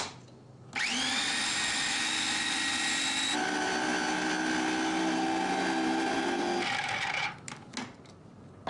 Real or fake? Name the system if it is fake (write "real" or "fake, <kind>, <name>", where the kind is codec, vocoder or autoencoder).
real